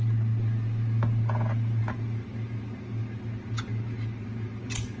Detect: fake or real real